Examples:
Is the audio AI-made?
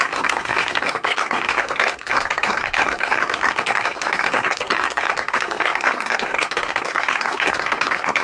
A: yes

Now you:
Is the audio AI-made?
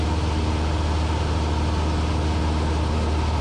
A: no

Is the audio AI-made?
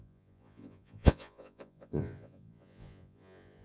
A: yes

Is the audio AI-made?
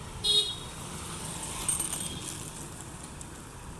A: no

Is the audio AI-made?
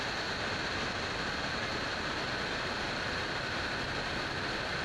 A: no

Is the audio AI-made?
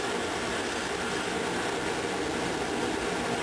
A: no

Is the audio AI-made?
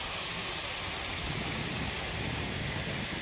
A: no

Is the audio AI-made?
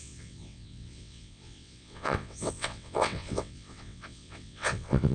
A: yes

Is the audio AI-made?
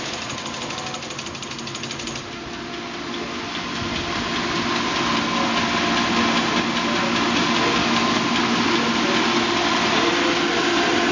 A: no